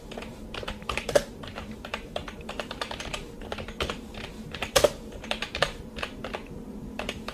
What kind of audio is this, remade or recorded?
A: remade